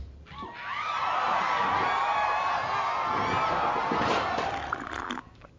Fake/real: real